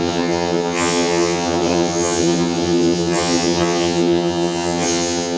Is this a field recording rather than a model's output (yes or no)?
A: no